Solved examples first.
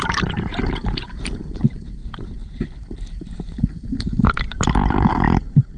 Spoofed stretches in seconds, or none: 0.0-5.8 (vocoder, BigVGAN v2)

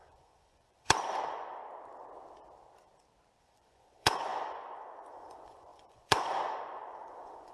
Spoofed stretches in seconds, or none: 0.0-1.6 (vocoder, Vocos); 3.4-7.5

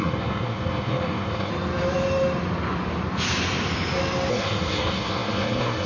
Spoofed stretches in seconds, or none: 0.0-1.5 (codec, SNAC); 4.3-5.9

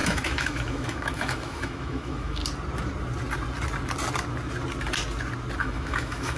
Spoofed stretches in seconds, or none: 0.0-2.4 (autoencoder, DAC-VAE); 5.6-6.4

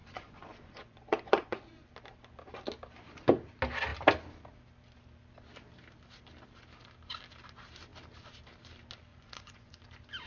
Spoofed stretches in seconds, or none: 0.0-1.9 (vocoder, Vocos); 9.1-9.8

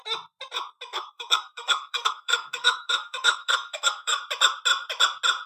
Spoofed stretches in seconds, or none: 0.9-4.2 (codec, SNAC)